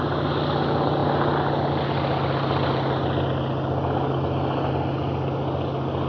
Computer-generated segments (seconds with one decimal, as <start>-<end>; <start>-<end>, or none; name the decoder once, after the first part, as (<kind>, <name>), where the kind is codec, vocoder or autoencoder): none